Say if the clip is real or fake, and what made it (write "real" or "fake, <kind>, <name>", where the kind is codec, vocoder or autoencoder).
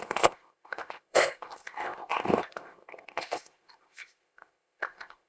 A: fake, codec, ZipCodec